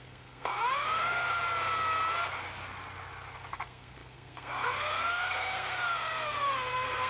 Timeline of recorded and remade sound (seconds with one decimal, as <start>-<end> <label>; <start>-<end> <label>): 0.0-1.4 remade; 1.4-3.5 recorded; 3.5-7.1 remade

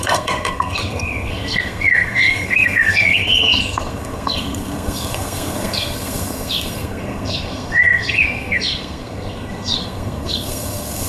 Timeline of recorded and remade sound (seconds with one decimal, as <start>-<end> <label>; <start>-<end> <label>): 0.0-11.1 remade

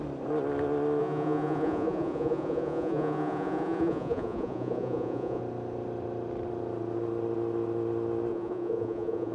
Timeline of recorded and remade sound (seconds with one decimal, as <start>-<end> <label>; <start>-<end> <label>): 0.0-1.0 recorded; 1.0-5.4 remade; 5.4-8.3 recorded; 8.3-9.3 remade

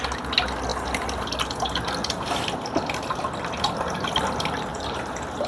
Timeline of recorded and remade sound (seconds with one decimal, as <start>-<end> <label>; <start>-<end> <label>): 0.0-4.7 recorded; 4.7-5.5 remade

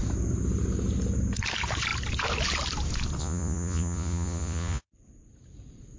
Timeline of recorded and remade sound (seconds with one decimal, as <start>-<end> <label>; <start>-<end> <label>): 0.0-3.2 recorded; 3.2-4.9 remade; 4.9-6.0 recorded

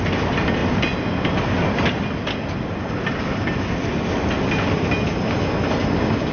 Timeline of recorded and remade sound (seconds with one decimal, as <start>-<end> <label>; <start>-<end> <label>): 0.0-6.3 recorded

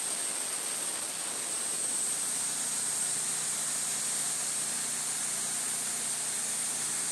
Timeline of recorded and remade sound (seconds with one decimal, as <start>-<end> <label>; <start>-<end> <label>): 0.0-7.1 recorded

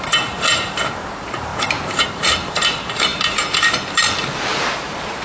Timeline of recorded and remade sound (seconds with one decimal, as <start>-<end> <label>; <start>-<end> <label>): 0.0-1.5 remade; 1.5-2.1 recorded; 2.1-5.2 remade